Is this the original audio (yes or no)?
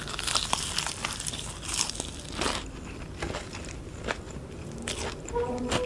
yes